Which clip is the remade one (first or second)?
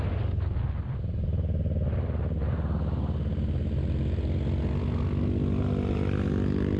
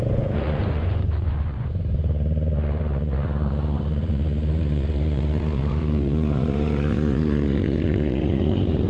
second